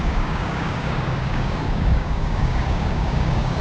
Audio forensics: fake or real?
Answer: fake